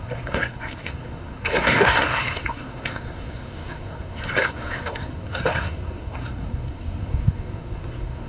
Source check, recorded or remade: remade